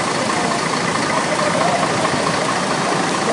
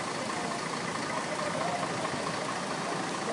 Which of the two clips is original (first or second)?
second